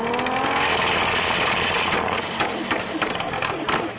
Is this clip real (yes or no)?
yes